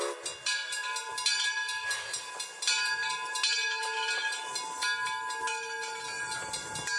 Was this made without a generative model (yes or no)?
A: yes